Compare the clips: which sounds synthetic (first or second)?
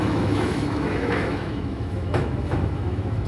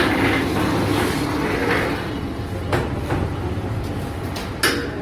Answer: first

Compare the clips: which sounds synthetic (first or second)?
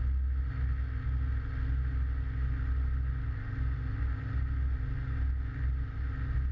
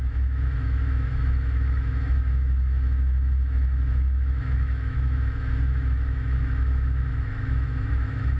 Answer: second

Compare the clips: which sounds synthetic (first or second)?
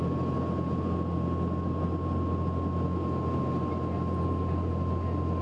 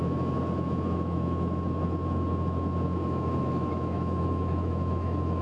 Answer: second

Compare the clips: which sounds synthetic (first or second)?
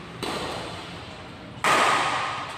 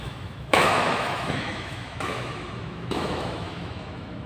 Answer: second